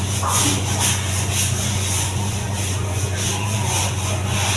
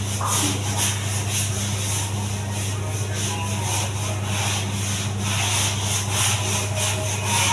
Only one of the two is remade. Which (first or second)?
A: first